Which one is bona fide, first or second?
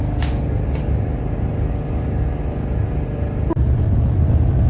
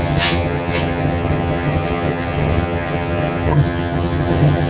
first